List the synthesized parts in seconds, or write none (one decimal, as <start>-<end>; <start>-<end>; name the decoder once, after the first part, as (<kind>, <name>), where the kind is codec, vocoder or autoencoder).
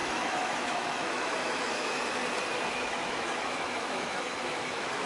0.0-2.2 (autoencoder, DAC-VAE); 2.7-5.1